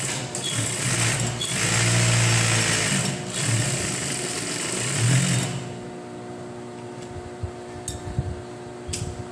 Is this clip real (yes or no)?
yes